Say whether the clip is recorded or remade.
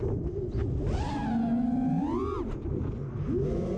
recorded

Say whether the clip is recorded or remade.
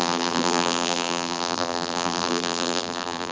remade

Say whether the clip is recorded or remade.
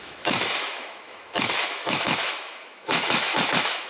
remade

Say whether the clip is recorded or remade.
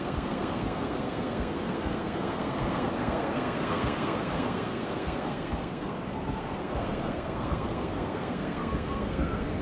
remade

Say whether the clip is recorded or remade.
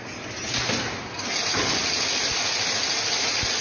recorded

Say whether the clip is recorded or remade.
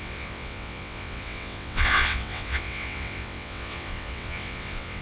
remade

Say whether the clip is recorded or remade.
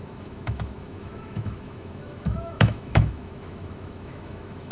remade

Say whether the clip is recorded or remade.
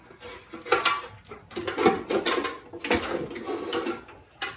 recorded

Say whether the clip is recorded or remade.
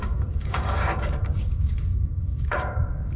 remade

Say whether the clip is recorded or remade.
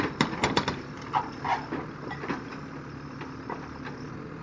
recorded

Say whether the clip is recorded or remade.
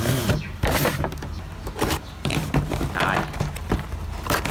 remade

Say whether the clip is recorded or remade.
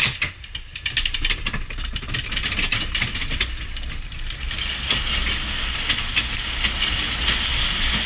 recorded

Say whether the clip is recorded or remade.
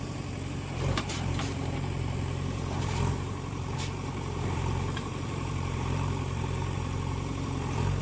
remade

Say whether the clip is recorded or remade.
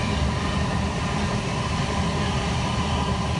recorded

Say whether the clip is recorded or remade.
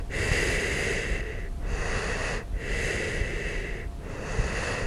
recorded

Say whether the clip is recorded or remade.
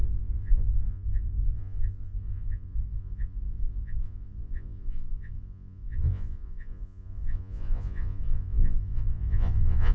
remade